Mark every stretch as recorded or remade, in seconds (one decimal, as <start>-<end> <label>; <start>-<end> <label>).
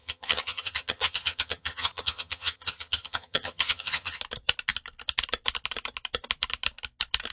0.0-4.2 remade; 4.2-7.3 recorded